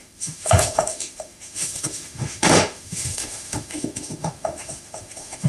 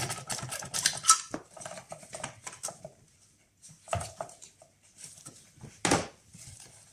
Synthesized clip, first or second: first